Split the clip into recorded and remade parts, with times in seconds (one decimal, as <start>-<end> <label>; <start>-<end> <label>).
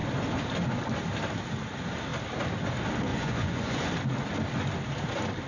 0.0-3.1 recorded; 3.1-3.9 remade; 3.9-5.5 recorded